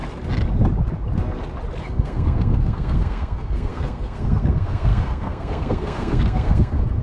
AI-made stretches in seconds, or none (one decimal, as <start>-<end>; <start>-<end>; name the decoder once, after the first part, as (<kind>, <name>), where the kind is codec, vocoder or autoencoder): 1.8-7.0 (codec, SNAC)